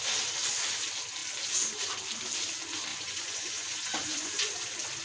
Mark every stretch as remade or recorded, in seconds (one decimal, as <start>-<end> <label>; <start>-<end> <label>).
0.0-2.9 recorded; 2.9-4.5 remade; 4.5-5.0 recorded